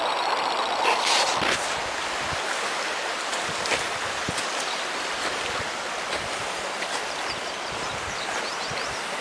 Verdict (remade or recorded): recorded